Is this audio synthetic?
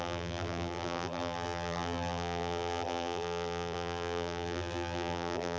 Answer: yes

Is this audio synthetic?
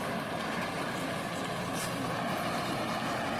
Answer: no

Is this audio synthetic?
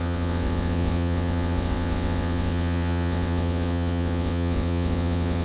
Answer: yes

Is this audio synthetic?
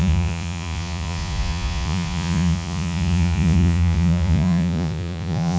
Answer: yes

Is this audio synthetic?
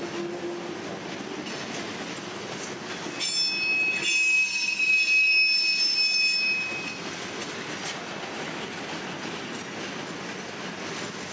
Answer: no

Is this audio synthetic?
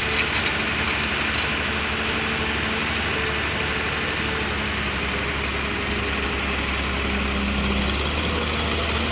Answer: no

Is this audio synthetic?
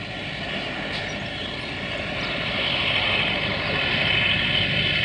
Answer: no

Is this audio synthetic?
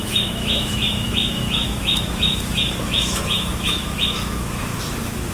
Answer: yes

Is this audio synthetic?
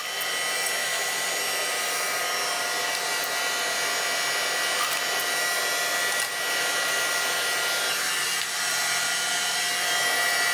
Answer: no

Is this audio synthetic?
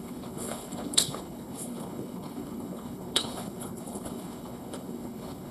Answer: yes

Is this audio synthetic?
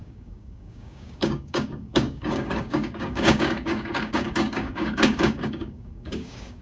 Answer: yes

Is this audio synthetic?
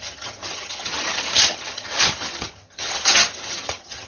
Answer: yes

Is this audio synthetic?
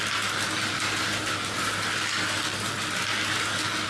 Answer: no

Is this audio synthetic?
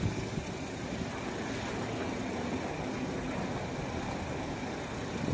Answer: no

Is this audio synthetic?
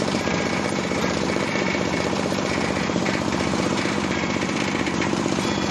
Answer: yes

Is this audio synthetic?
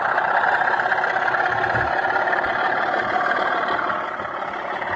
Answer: no